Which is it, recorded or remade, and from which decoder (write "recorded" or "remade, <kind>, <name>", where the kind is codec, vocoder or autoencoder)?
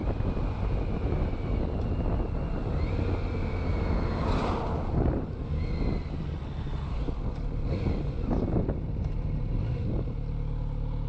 recorded